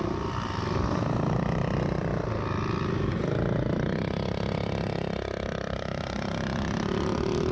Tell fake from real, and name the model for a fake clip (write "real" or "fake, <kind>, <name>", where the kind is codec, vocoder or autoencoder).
real